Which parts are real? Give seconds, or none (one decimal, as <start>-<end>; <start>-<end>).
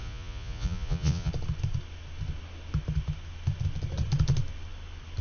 1.3-5.2